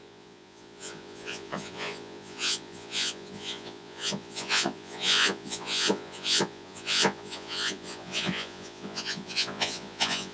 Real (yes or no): no